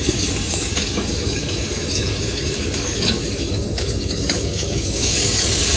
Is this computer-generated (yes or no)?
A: yes